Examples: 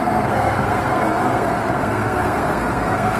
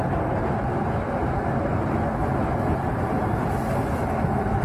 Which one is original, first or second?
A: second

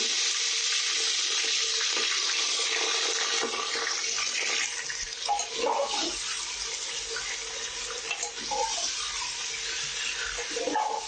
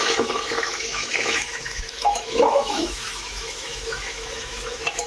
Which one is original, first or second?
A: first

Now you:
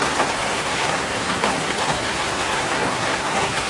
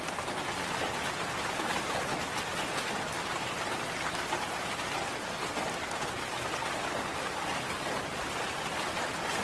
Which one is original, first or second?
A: second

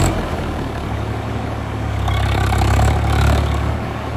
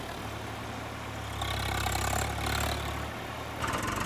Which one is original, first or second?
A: second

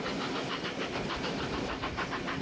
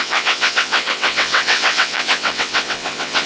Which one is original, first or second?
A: first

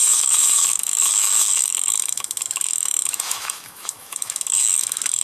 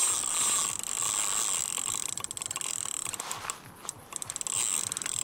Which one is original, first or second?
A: second